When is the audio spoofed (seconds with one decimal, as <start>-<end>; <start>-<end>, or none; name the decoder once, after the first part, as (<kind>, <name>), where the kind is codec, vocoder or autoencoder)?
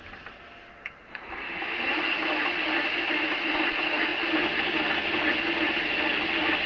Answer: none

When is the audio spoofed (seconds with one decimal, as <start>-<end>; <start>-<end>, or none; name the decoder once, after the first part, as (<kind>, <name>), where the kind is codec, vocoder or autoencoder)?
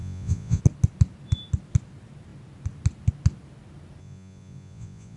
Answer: 0.0-0.6 (vocoder, Vocos); 4.0-5.2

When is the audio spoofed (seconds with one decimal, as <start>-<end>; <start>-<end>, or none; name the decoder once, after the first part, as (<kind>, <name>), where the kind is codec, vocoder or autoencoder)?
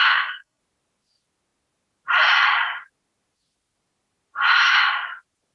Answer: 0.0-0.6 (codec, SNAC)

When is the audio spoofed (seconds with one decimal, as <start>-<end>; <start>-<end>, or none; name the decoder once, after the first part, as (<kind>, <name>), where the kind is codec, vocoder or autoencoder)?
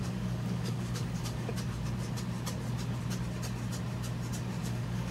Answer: 0.0-1.5 (codec, DAC); 4.6-5.1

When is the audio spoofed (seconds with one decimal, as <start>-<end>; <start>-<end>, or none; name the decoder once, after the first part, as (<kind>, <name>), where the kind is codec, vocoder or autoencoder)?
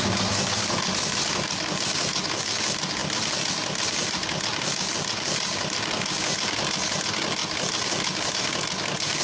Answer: none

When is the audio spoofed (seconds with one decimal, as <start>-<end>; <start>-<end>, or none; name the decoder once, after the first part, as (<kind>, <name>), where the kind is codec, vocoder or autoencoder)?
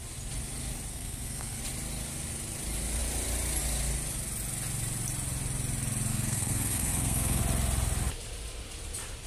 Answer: 0.9-1.6 (codec, SNAC); 6.1-7.4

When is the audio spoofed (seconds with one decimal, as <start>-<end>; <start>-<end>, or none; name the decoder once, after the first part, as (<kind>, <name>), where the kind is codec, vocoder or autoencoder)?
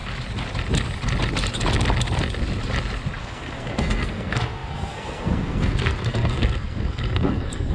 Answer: 3.2-7.7 (codec, SNAC)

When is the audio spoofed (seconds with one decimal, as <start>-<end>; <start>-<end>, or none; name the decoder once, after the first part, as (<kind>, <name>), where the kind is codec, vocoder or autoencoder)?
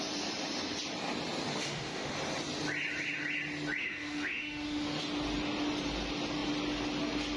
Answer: 1.5-2.1 (autoencoder, DAC-VAE); 3.8-5.0